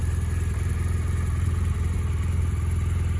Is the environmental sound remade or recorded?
recorded